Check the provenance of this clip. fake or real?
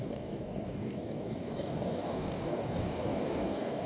fake